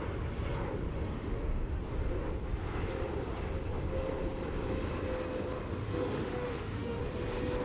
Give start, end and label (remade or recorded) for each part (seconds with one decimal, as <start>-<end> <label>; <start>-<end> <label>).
0.0-0.9 recorded; 0.9-1.8 remade; 1.8-5.8 recorded; 5.8-7.0 remade; 7.0-7.6 recorded